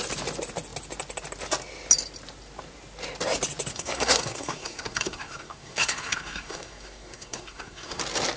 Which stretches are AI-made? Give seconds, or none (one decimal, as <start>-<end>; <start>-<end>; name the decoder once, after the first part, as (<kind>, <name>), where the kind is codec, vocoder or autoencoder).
3.7-8.0 (codec, SNAC)